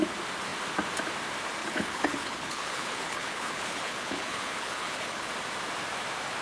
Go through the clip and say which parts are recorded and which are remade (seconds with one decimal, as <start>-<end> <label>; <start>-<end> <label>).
0.0-1.6 recorded; 1.6-5.3 remade; 5.3-6.4 recorded